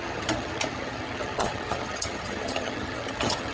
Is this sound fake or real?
fake